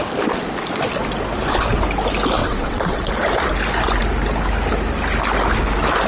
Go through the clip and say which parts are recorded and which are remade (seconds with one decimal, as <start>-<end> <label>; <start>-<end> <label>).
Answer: 0.0-2.4 recorded; 2.4-3.1 remade; 3.1-6.1 recorded